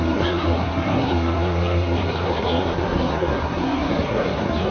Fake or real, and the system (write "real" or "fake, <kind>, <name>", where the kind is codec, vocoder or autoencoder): fake, codec, SNAC